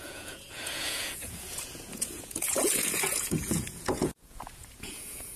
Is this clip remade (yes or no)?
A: yes